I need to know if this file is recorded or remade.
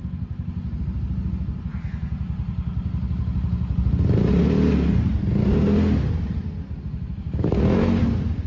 recorded